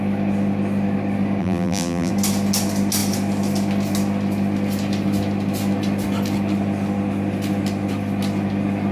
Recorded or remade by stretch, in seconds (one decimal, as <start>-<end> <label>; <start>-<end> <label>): 0.0-1.4 recorded; 1.4-2.1 remade; 2.1-8.9 recorded